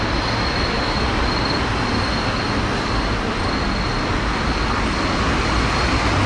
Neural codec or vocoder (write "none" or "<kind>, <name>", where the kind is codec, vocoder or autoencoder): none